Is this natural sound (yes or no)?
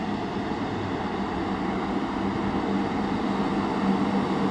yes